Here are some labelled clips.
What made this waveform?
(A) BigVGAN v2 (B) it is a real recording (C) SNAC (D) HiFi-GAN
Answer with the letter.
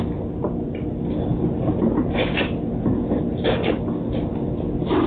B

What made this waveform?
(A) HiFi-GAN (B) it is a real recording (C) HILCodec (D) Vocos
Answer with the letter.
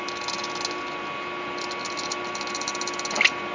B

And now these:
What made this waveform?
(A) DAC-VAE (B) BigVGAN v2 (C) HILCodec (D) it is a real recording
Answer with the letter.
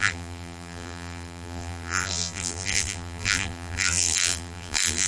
B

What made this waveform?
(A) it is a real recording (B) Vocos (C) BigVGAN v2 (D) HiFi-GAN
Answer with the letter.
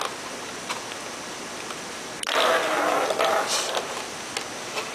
A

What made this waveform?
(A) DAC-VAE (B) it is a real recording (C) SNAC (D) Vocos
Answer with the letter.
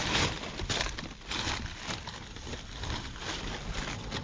B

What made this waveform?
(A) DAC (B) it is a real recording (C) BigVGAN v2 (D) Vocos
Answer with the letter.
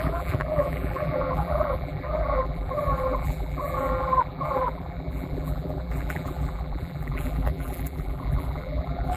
C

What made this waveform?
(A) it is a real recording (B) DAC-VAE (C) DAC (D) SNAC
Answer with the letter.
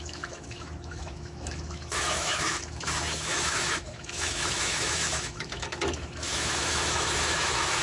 B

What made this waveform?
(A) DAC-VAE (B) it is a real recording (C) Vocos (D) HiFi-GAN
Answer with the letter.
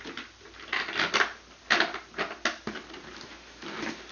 B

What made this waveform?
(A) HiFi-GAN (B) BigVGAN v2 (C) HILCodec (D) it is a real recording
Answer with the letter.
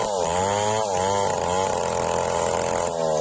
D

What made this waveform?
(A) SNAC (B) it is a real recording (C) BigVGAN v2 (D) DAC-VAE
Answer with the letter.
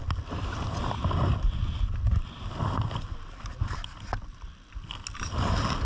B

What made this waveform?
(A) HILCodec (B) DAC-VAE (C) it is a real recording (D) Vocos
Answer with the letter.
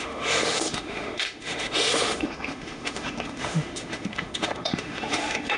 B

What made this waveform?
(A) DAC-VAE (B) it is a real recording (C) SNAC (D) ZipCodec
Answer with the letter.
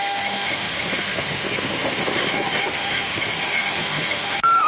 A